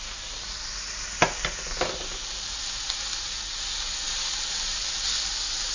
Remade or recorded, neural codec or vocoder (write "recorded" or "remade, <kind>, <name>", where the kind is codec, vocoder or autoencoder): recorded